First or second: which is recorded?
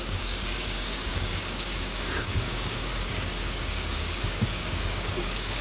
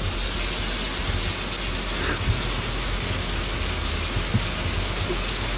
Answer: second